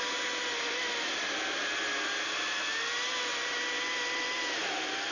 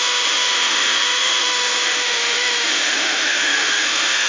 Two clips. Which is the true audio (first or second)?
first